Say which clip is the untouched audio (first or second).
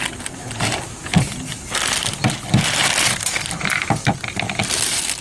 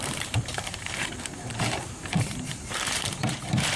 first